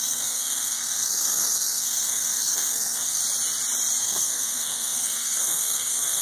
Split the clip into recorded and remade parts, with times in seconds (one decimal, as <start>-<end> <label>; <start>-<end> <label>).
0.0-3.2 remade; 3.2-4.0 recorded; 4.0-6.2 remade